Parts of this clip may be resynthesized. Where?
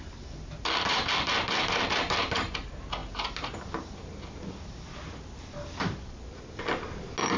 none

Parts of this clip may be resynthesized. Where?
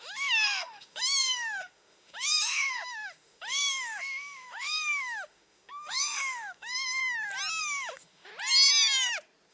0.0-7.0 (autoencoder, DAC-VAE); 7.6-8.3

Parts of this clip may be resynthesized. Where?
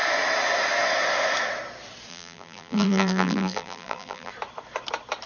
2.1-4.3 (vocoder, BigVGAN v2)